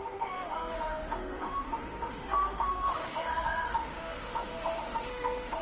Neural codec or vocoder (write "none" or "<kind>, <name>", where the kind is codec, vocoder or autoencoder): autoencoder, DAC-VAE